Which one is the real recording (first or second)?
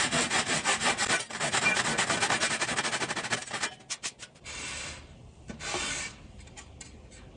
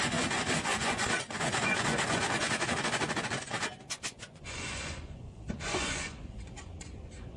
first